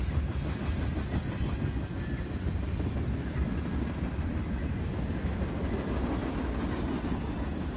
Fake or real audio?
real